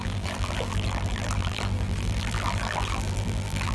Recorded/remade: remade